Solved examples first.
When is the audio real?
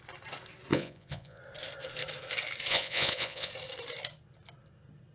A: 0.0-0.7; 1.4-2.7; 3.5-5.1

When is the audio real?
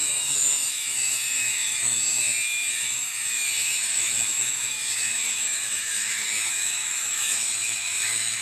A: none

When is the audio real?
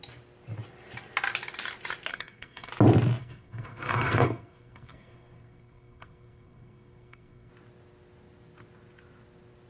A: 0.0-2.1; 2.7-3.2; 7.5-9.7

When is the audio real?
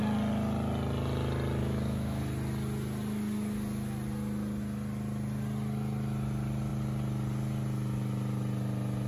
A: 0.0-1.6; 2.2-9.1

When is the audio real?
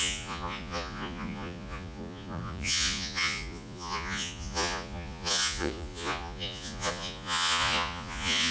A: none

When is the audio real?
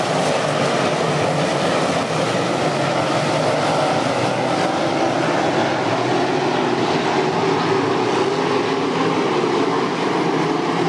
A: 0.0-10.9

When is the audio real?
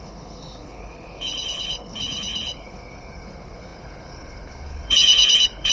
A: none